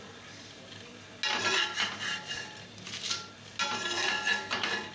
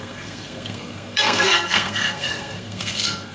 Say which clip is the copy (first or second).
second